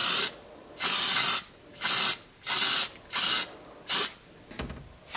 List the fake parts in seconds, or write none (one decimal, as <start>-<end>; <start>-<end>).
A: none